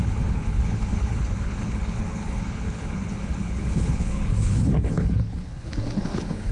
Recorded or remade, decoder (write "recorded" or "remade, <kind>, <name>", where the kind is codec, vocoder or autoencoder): remade, codec, HILCodec